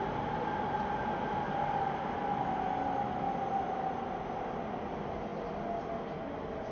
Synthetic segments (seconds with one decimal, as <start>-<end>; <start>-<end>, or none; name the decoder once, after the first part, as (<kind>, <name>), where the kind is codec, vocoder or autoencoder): none